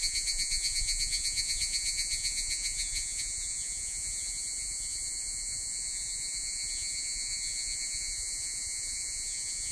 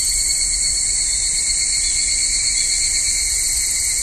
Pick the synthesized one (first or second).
first